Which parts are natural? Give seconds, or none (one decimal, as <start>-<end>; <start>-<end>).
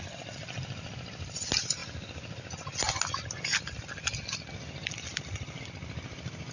0.0-6.5